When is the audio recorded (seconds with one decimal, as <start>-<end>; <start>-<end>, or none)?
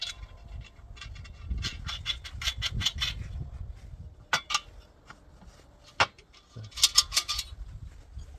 0.0-7.1; 7.9-8.4